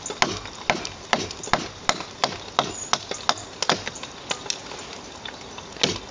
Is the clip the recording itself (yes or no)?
yes